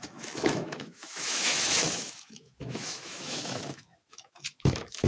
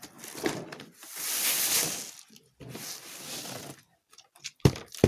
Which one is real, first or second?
second